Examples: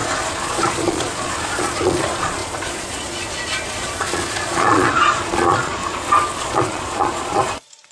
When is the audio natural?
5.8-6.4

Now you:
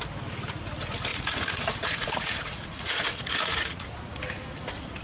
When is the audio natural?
0.0-1.1; 3.9-5.0

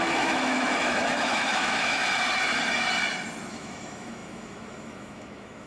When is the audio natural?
2.0-3.5